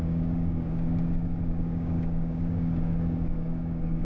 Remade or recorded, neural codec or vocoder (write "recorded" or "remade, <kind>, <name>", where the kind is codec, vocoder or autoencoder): remade, codec, DAC